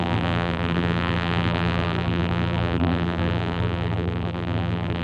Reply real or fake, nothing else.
fake